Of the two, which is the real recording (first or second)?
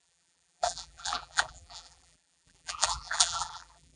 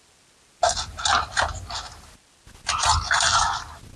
second